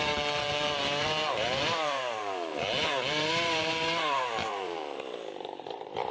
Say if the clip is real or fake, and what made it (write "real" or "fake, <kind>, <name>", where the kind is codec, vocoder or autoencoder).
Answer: fake, vocoder, BigVGAN v2